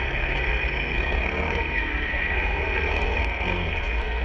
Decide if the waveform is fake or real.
fake